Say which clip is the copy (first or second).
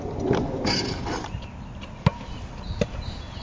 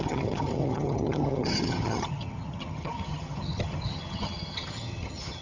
second